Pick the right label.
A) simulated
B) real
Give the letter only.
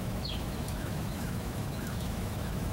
A